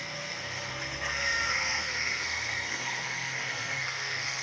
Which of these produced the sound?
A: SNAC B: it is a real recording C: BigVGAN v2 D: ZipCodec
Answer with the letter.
A